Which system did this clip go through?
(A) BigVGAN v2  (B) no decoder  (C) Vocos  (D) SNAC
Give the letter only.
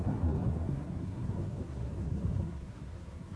D